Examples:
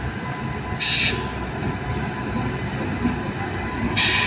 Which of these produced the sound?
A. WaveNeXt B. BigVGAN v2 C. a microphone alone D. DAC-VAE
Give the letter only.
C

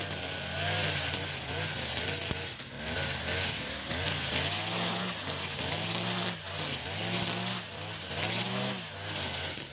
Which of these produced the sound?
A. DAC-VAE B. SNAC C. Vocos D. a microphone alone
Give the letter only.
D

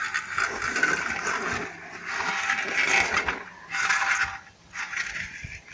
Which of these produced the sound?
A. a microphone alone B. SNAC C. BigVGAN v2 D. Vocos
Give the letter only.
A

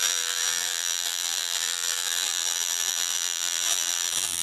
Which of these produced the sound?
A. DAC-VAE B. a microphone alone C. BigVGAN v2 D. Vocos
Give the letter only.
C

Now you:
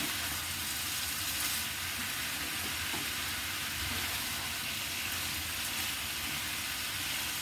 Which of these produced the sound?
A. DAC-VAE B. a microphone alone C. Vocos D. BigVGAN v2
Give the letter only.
B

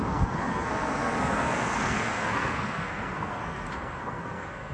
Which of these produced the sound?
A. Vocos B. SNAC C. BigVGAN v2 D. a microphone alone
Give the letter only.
B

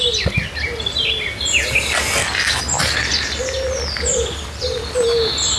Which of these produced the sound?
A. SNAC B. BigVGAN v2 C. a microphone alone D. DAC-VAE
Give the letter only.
C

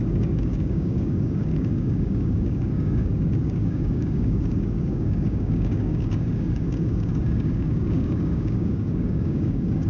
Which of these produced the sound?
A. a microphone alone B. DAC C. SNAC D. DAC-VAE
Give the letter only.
B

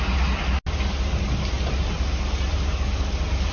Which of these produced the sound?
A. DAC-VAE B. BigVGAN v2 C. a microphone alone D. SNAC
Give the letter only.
C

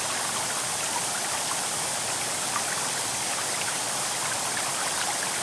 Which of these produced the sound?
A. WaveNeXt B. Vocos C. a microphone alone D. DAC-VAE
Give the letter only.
C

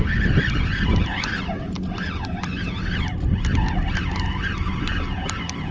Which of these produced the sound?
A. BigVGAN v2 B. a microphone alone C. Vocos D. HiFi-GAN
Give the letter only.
B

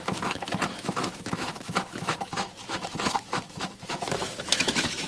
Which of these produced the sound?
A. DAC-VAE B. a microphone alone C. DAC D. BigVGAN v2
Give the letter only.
A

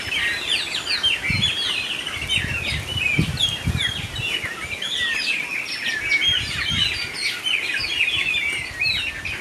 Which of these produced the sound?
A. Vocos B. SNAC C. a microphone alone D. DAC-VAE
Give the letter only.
C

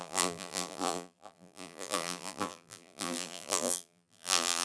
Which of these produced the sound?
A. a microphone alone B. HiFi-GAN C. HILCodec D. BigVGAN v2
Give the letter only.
D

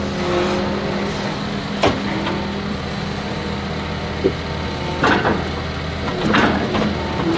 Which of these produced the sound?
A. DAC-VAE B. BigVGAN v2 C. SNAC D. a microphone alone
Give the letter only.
D